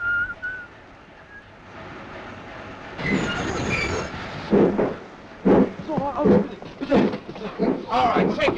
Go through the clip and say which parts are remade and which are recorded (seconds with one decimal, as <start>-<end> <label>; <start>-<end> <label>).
0.0-6.9 recorded; 6.9-8.6 remade